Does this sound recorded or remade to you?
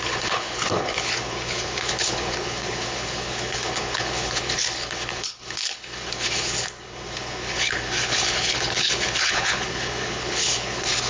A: remade